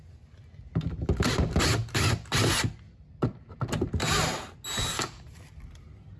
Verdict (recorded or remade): recorded